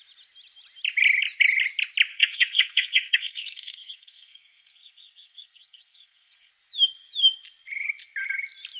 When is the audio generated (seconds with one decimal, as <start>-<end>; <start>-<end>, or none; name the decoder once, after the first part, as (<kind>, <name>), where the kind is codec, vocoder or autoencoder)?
2.1-6.5 (codec, SNAC)